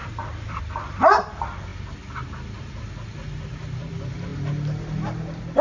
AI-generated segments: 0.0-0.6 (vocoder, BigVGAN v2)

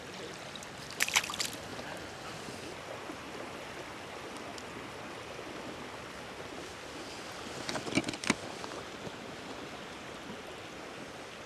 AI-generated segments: none